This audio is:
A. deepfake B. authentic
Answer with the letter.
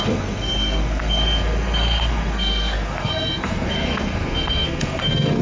A